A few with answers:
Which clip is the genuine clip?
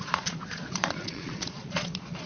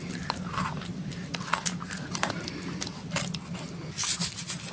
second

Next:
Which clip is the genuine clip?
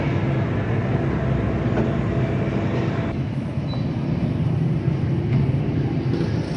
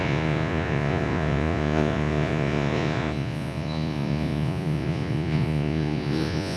first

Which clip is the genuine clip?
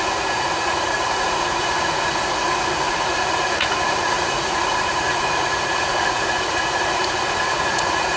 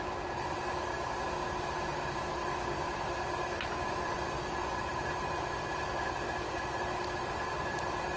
second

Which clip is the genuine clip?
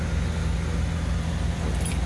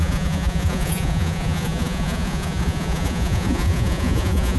first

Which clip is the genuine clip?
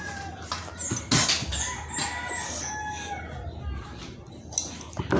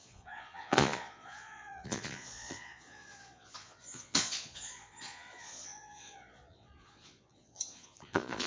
first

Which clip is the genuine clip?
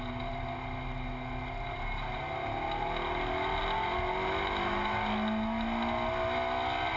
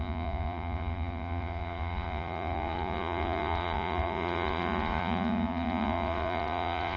first